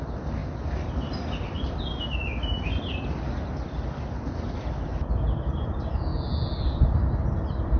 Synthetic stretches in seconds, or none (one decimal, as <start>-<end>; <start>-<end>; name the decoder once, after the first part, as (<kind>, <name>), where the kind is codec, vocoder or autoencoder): none